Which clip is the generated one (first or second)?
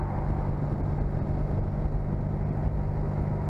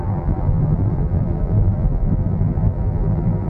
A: second